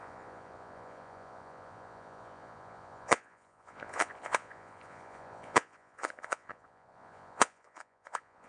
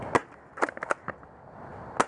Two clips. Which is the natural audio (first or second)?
second